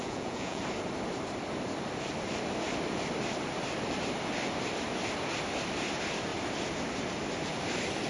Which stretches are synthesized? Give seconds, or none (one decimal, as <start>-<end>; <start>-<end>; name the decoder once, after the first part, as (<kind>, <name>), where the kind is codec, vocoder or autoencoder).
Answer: 0.0-0.6 (vocoder, Vocos)